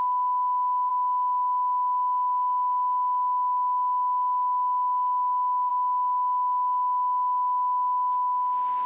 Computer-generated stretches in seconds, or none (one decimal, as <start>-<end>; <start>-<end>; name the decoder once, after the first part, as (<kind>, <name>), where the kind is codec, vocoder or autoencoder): none